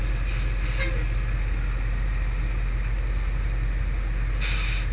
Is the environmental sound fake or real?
real